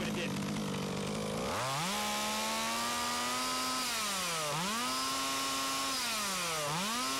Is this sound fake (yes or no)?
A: no